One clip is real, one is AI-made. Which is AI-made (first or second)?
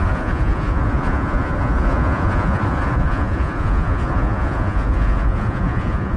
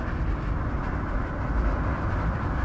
first